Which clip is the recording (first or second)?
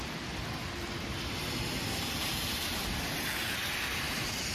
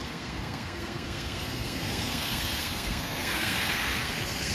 first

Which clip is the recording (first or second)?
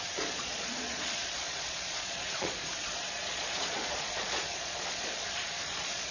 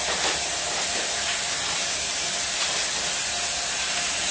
second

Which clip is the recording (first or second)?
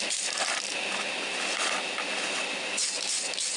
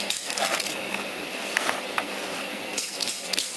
first